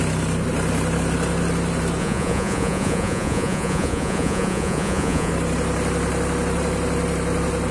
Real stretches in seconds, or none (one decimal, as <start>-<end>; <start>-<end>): 0.0-2.0; 5.3-7.7